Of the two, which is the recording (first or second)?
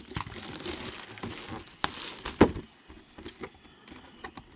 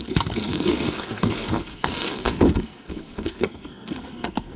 first